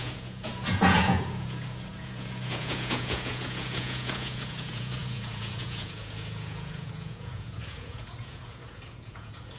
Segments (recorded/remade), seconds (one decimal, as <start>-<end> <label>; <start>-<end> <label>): 0.0-9.6 remade